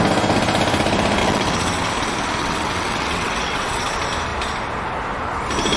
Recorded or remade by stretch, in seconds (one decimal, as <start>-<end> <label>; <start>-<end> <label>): 0.0-1.2 recorded; 1.2-1.9 remade; 1.9-2.4 recorded; 2.4-3.9 remade; 3.9-5.8 recorded